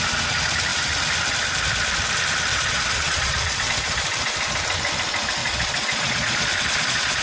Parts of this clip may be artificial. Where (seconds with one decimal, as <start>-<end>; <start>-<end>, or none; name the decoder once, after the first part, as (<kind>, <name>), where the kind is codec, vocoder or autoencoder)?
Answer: 2.5-3.7 (vocoder, Vocos); 5.4-7.2